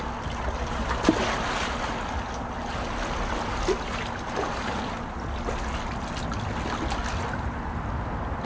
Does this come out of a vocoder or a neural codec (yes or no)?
no